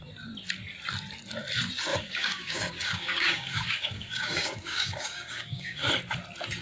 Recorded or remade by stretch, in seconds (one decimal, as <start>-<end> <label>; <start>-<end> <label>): 0.0-1.9 recorded; 1.9-5.9 remade; 5.9-6.6 recorded